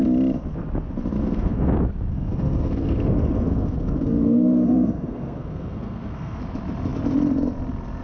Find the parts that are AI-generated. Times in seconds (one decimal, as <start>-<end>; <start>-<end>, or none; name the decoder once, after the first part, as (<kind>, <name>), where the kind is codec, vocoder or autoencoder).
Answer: 1.2-1.7 (codec, SNAC); 2.1-6.4